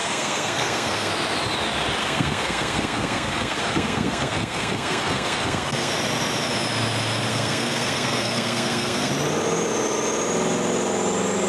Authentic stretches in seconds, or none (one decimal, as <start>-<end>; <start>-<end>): 1.1-2.0; 5.9-7.3; 9.1-11.5